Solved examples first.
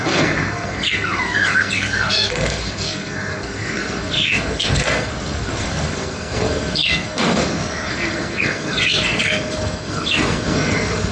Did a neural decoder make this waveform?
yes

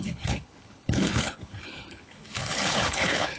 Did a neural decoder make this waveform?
yes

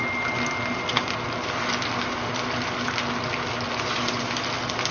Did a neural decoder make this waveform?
no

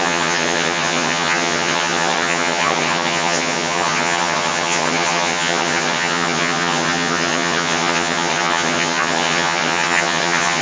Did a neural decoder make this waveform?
yes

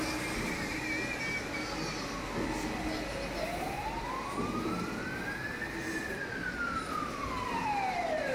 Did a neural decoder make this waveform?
no